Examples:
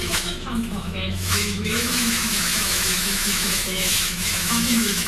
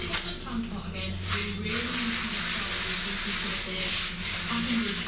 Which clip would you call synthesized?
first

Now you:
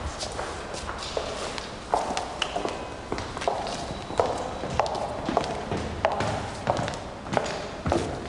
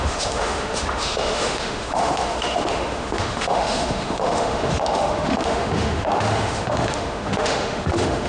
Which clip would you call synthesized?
second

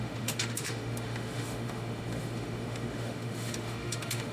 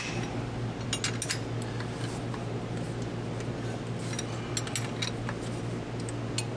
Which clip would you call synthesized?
first